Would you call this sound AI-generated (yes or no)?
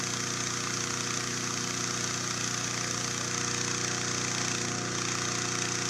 no